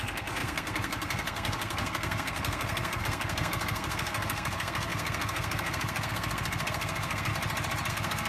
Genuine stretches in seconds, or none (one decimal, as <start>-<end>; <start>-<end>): 7.3-7.9